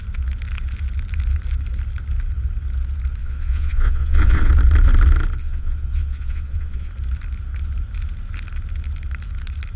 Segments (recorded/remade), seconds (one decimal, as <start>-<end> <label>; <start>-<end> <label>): 0.0-3.2 recorded; 3.2-4.5 remade; 4.5-5.4 recorded; 5.4-6.9 remade; 6.9-9.8 recorded